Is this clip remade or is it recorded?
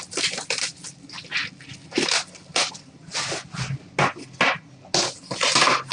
recorded